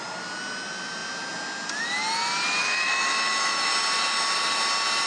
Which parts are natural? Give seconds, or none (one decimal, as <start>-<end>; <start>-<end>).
0.0-2.6; 3.7-5.1